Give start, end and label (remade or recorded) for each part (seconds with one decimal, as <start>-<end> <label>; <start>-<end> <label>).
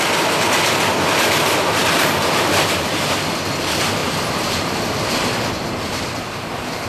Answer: 0.0-1.8 recorded; 1.8-2.7 remade; 2.7-4.0 recorded; 4.0-6.9 remade